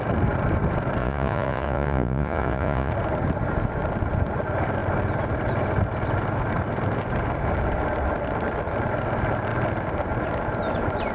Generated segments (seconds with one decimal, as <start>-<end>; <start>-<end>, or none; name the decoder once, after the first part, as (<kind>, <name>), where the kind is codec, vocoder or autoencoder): 1.0-2.9 (vocoder, Vocos)